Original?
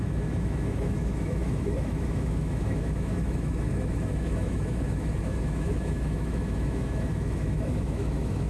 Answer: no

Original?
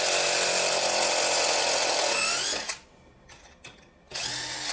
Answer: yes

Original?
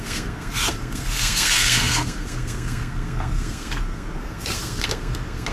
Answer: no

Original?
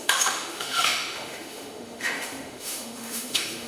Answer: no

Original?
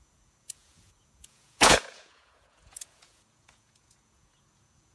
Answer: no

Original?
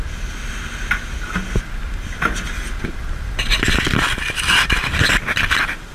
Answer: yes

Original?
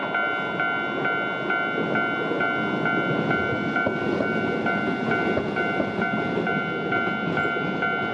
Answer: yes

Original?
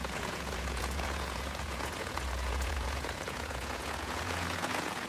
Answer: no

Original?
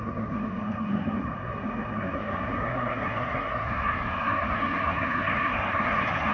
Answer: no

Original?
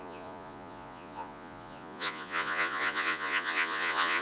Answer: no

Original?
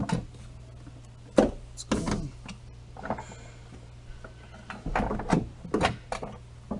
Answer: yes